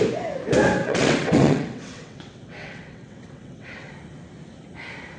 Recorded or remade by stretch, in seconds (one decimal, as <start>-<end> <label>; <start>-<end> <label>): 0.0-0.8 recorded; 0.8-3.9 remade; 3.9-5.2 recorded